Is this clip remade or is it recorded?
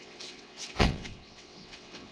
remade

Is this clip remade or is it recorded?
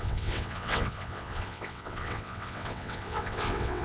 remade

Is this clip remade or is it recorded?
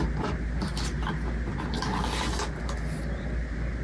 recorded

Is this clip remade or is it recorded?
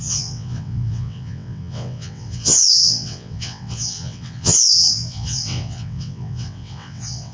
remade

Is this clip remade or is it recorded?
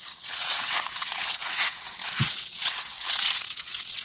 remade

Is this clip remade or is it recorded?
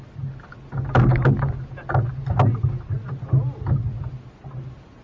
recorded